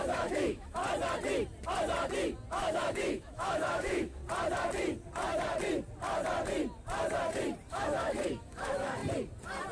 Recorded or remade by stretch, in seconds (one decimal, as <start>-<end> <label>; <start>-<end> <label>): 0.0-0.8 remade; 0.8-2.5 recorded; 2.5-4.2 remade; 4.2-7.7 recorded; 7.7-9.0 remade; 9.0-9.7 recorded